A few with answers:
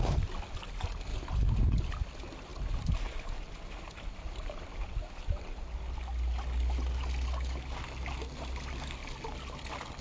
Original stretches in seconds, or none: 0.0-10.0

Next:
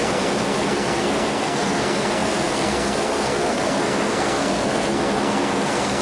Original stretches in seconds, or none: none

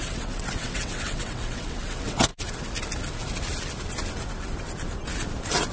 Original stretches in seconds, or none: 2.3-5.7

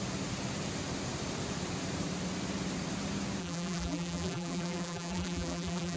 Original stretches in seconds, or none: 0.0-3.4

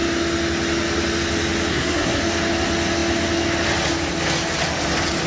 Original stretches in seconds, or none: 0.0-1.7; 2.2-5.3

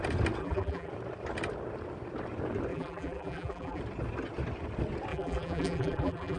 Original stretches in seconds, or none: 0.0-0.4; 0.9-2.7; 3.8-5.1